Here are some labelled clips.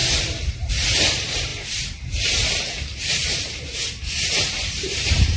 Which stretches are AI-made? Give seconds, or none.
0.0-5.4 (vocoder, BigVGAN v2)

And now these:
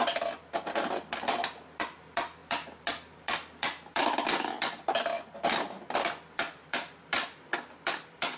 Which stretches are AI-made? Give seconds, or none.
0.0-8.4 (vocoder, BigVGAN v2)

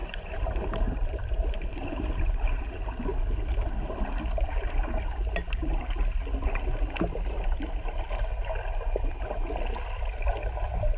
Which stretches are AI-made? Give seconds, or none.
0.0-2.3 (vocoder, BigVGAN v2)